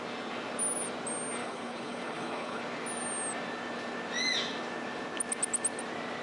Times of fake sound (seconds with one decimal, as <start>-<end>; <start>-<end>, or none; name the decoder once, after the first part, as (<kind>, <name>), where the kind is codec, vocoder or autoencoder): 1.4-2.6 (codec, HILCodec)